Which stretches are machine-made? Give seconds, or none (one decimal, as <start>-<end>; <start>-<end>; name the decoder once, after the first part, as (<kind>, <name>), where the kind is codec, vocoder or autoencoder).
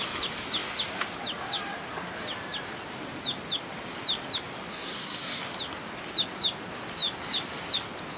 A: 4.7-5.4 (codec, SNAC)